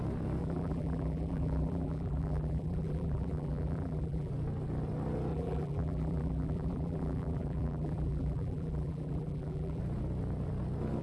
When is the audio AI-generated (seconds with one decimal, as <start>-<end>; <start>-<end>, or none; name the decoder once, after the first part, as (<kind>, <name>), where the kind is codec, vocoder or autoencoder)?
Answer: 0.4-4.3 (vocoder, BigVGAN v2); 5.3-9.8